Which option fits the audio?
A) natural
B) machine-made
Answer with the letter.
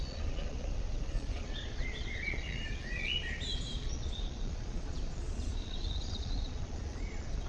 B